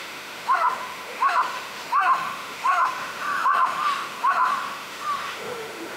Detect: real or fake fake